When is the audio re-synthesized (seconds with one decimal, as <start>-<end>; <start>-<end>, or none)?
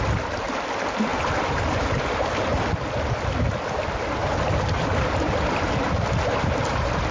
1.1-2.1; 4.2-5.7